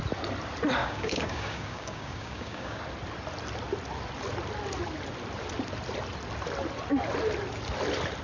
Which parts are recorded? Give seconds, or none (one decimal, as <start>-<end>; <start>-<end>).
0.0-0.8; 2.8-8.2